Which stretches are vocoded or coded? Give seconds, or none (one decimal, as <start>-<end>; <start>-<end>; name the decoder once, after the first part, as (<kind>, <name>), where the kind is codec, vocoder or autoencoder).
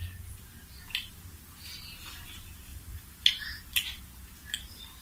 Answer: 2.7-3.4 (vocoder, BigVGAN v2)